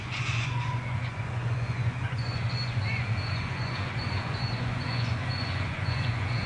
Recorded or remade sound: remade